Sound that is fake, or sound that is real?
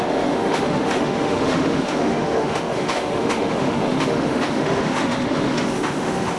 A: fake